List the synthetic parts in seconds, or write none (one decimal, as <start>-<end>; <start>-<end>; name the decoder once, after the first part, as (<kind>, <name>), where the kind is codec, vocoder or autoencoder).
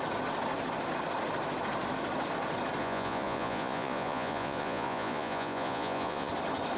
2.8-6.3 (vocoder, Vocos)